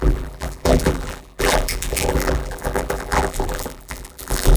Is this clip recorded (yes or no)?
no